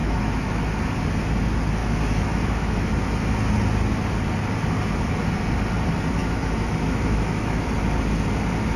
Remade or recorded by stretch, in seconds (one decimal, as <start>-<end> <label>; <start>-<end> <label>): 0.0-0.6 remade; 0.6-1.8 recorded; 1.8-2.9 remade; 2.9-6.2 recorded; 6.2-7.6 remade; 7.6-8.8 recorded